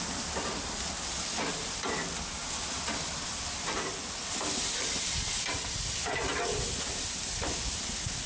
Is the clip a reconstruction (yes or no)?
no